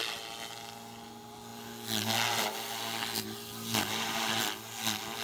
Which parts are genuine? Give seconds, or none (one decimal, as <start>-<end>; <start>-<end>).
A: 0.0-5.2